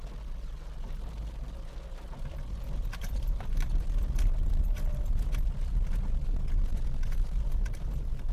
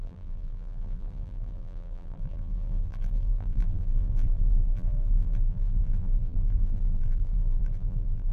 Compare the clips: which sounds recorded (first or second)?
first